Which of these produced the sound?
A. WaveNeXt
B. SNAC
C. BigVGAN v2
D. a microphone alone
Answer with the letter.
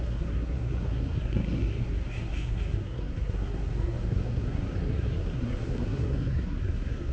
B